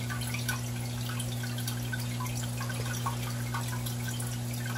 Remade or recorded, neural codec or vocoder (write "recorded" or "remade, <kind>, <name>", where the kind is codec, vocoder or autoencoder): recorded